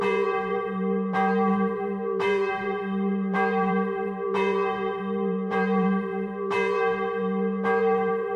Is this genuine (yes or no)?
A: no